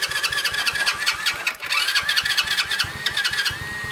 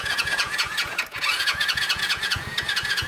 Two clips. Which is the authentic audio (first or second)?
first